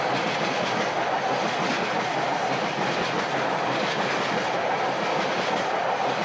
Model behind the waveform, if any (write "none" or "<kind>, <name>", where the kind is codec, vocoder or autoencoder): none